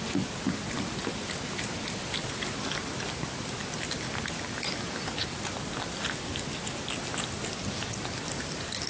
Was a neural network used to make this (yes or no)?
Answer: no